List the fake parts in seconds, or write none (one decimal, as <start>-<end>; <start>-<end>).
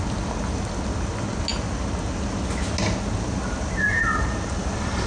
none